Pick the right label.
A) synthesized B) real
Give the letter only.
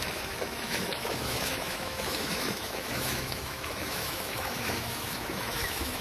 A